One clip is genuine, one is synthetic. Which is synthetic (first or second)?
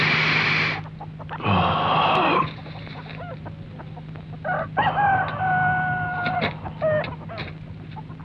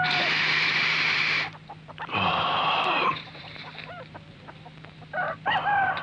second